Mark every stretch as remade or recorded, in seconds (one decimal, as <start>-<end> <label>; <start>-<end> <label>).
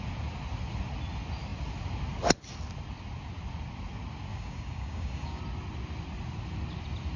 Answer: 0.0-4.3 recorded; 4.3-5.4 remade; 5.4-7.2 recorded